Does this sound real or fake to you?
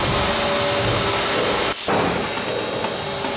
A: real